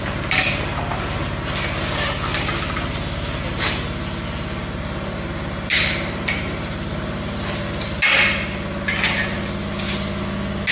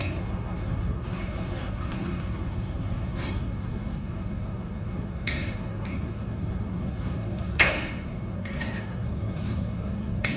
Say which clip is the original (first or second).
first